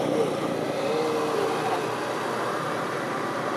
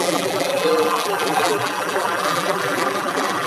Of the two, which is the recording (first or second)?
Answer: first